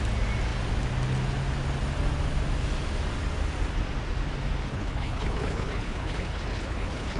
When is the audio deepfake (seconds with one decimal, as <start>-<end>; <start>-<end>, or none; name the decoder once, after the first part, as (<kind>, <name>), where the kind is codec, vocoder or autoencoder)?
4.7-7.2 (codec, HILCodec)